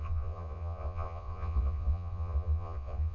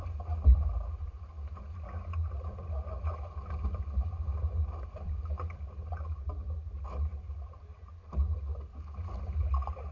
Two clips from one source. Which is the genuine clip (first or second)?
second